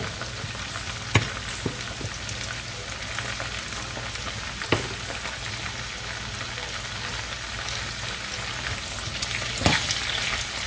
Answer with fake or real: real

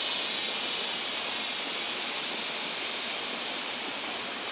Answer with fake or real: real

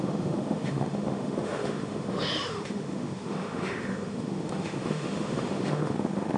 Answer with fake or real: fake